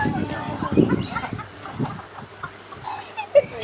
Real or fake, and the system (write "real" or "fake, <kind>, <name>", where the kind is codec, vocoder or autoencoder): real